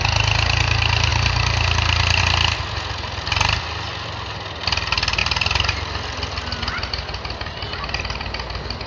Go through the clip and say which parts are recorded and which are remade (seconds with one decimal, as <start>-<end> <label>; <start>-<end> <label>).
0.0-1.1 recorded; 1.1-2.2 remade; 2.2-5.2 recorded; 5.2-8.3 remade; 8.3-8.9 recorded